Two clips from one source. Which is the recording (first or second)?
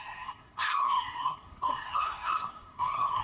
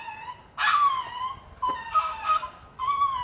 second